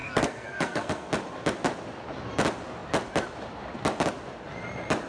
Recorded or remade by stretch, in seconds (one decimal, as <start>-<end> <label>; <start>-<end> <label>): 0.0-1.1 remade; 1.1-5.1 recorded